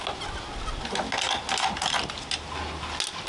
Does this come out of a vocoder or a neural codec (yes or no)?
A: no